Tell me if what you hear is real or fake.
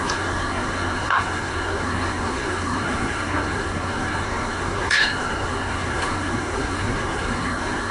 fake